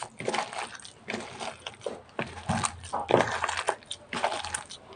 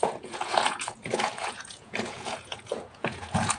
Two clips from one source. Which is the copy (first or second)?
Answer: second